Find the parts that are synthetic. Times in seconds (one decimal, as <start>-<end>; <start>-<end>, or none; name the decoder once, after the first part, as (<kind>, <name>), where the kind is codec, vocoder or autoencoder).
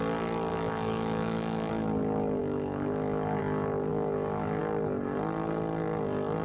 0.5-1.7 (autoencoder, DAC-VAE); 2.4-3.4; 3.9-4.6